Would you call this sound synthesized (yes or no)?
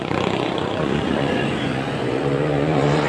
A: yes